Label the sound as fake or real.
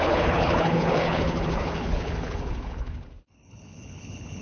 fake